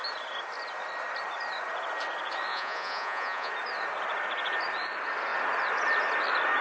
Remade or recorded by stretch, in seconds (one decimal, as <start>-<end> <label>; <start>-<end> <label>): 0.0-2.5 recorded; 2.5-3.5 remade; 3.5-6.6 recorded